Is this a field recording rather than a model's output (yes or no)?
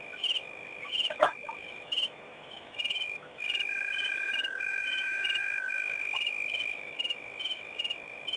no